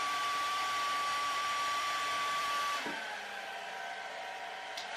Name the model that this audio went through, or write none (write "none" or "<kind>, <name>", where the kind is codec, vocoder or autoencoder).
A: vocoder, BigVGAN v2